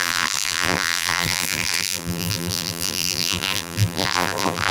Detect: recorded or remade remade